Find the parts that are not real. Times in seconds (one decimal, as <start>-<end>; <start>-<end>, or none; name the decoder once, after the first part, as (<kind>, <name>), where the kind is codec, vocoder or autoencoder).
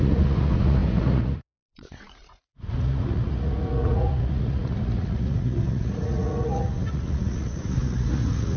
0.0-8.6 (vocoder, Vocos)